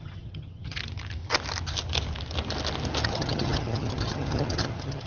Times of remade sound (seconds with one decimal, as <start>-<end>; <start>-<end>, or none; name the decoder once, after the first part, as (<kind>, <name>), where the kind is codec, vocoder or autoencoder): 0.0-0.8 (vocoder, HiFi-GAN); 3.0-5.1

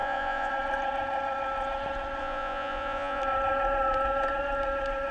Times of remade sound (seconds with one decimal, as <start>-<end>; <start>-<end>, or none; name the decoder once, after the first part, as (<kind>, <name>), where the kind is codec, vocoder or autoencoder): 0.0-0.5 (vocoder, Vocos); 2.2-3.2

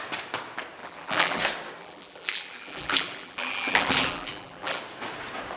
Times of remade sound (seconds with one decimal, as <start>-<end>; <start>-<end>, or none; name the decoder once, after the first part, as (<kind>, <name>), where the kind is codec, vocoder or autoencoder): 0.8-1.4 (vocoder, BigVGAN v2); 1.8-4.8

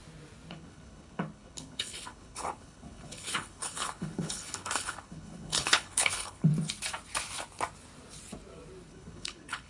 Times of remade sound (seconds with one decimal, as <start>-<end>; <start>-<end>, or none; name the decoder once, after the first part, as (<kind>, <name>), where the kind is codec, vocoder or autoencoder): 0.5-6.5 (codec, HILCodec); 8.9-9.7

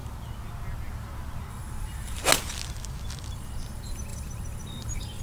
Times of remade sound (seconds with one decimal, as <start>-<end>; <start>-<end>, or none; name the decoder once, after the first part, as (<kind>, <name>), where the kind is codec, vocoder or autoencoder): 1.5-2.3 (vocoder, BigVGAN v2); 3.3-5.2